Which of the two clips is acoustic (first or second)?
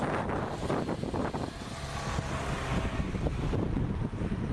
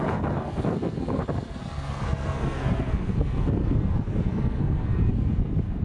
first